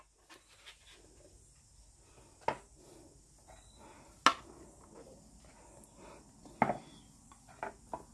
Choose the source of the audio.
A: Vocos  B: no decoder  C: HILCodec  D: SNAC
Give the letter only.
B